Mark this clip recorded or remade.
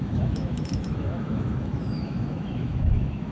remade